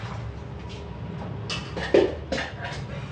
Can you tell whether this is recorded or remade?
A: recorded